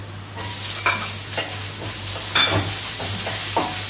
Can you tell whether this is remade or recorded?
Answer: recorded